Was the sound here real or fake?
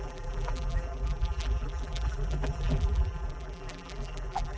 fake